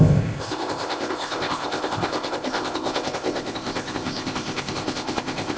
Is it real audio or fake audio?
fake